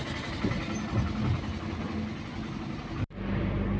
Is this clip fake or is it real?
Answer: real